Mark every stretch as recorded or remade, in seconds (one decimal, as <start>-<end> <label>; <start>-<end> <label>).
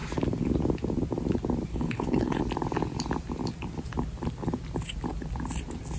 0.0-1.7 recorded; 1.7-2.4 remade; 2.4-6.0 recorded